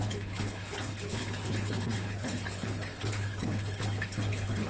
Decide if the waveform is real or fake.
fake